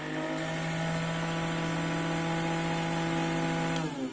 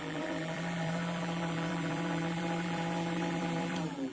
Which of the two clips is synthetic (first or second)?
second